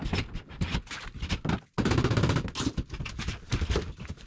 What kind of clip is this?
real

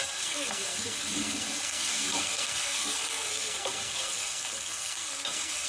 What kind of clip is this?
fake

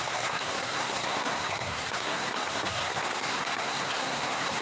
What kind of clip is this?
fake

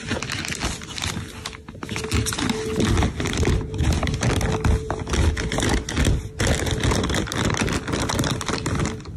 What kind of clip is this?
real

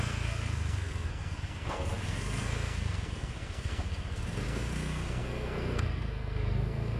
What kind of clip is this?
fake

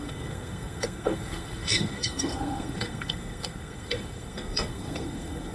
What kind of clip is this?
fake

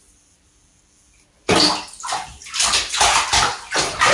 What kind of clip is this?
real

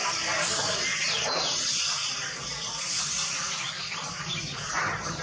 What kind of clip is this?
real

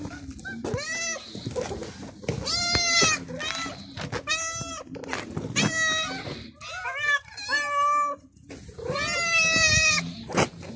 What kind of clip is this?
real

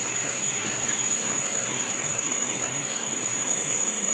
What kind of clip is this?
fake